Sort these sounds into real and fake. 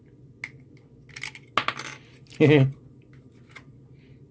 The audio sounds real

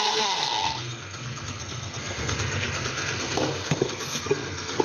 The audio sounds fake